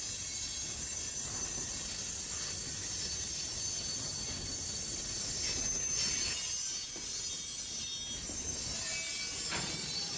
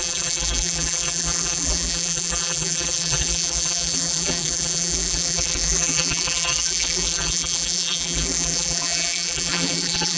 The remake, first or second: second